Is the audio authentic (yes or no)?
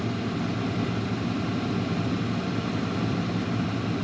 yes